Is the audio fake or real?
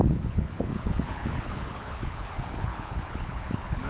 fake